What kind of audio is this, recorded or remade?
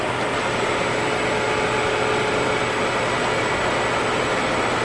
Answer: recorded